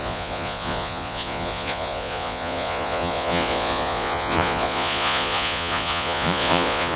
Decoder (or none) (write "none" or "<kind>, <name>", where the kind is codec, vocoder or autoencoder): vocoder, Vocos